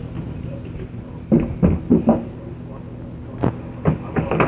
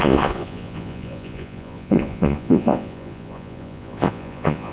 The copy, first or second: second